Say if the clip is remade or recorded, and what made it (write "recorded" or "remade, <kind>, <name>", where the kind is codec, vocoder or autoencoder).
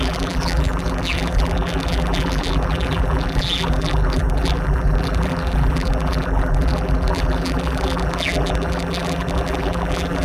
remade, vocoder, BigVGAN v2